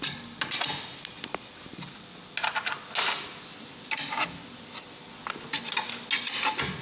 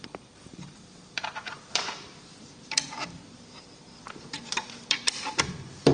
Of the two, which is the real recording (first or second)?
first